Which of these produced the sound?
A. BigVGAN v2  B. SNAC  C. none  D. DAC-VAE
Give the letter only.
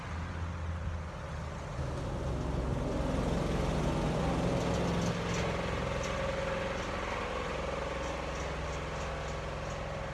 C